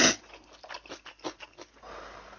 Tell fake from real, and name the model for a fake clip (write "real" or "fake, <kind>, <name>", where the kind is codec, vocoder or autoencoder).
real